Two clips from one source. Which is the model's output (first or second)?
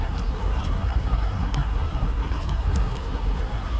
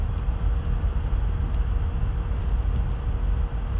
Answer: first